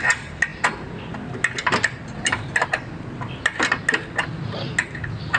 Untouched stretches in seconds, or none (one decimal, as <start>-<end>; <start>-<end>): 0.0-5.4